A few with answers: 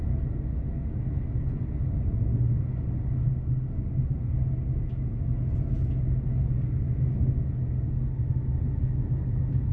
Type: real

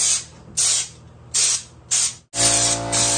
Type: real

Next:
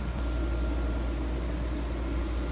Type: real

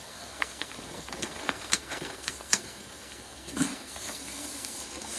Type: fake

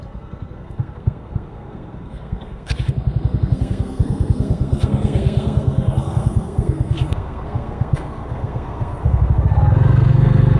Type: fake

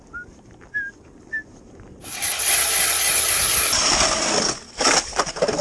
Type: real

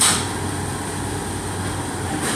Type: real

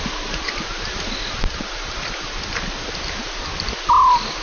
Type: real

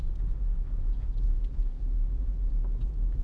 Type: fake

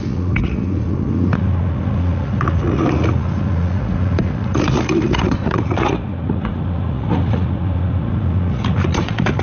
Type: fake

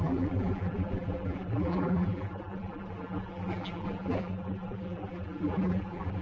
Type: fake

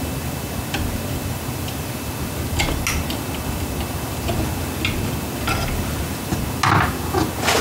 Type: real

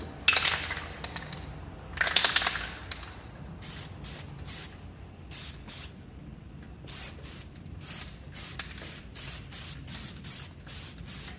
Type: real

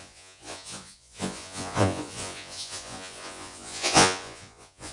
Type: fake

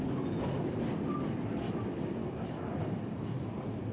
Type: real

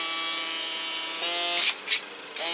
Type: real